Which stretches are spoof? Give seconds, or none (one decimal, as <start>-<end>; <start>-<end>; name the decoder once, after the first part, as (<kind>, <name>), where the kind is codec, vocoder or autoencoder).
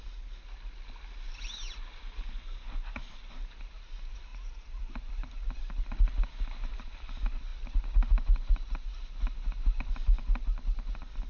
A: none